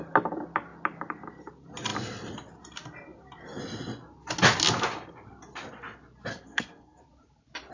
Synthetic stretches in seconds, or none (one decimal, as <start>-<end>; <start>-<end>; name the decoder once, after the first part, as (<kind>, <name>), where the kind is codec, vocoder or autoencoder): 6.3-7.0 (codec, SNAC)

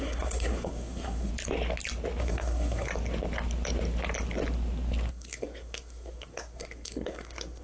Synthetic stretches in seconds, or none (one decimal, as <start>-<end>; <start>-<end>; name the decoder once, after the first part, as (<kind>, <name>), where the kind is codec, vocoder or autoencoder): 0.0-1.3 (codec, SNAC); 2.2-2.9; 5.1-7.6

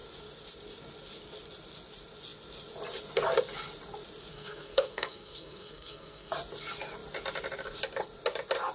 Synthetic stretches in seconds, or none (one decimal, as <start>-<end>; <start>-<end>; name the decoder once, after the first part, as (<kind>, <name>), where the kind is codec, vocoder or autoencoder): 4.3-6.3 (codec, SNAC)

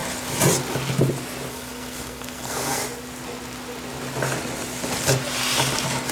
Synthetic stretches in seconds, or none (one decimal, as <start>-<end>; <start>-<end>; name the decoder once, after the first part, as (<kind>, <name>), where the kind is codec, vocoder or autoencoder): 1.5-2.8 (codec, SNAC)